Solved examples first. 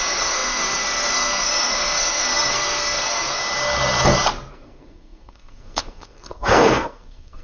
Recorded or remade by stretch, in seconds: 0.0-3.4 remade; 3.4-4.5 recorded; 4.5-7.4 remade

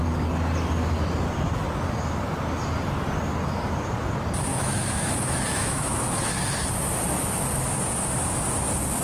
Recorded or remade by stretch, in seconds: 0.0-4.5 recorded; 4.5-6.3 remade; 6.3-9.0 recorded